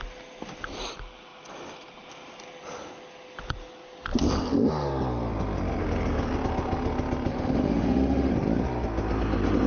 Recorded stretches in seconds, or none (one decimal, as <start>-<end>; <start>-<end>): 0.0-7.3; 8.3-9.7